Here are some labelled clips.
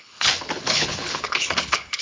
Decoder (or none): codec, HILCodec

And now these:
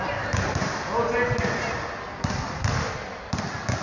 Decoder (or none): none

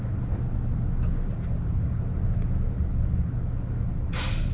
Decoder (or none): none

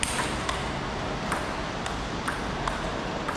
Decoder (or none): none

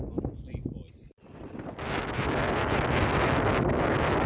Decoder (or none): none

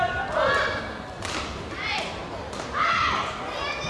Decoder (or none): none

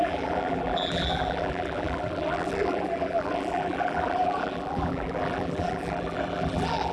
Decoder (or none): vocoder, BigVGAN v2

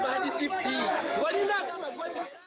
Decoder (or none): codec, DAC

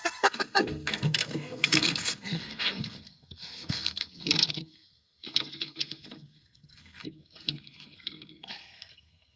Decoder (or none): codec, SNAC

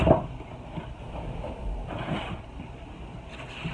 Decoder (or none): vocoder, BigVGAN v2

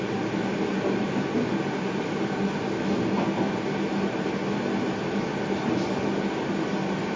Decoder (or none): none